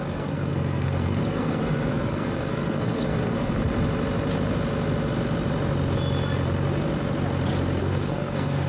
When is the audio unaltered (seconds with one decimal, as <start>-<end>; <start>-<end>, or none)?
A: 3.6-7.8